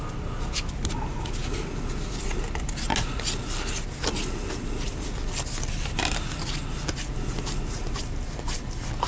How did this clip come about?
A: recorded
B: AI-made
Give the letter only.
A